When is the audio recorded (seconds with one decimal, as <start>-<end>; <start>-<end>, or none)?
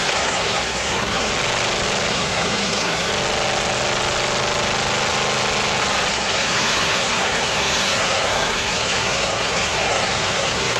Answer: 1.3-2.1; 3.1-6.1